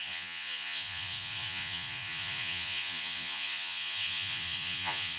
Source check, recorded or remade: remade